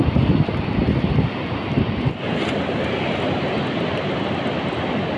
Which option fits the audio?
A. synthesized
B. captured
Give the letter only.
B